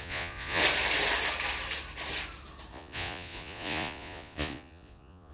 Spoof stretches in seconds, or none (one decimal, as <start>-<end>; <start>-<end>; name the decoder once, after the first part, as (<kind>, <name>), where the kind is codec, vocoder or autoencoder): 0.0-0.6 (vocoder, Vocos); 2.7-5.3